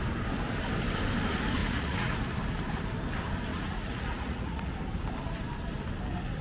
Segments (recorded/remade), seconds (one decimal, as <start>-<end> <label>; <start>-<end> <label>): 0.0-1.6 recorded; 1.6-2.1 remade; 2.1-3.5 recorded; 3.5-4.7 remade; 4.7-6.4 recorded